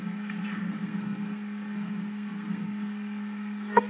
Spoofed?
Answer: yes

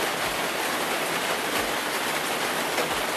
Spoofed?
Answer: no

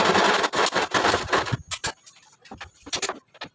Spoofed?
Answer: no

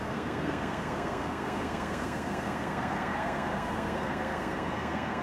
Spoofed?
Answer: yes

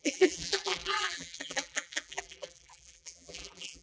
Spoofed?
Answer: yes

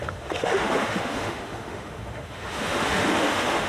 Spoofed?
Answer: yes